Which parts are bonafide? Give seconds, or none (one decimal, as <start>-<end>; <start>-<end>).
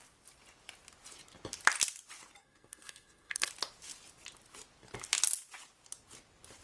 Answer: 0.0-2.4; 3.5-6.6